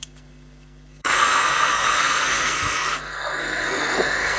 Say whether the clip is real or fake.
fake